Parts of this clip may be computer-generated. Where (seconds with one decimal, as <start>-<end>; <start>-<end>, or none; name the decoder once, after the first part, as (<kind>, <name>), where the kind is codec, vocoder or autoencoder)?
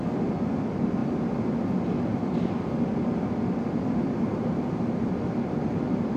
4.3-5.0 (vocoder, BigVGAN v2)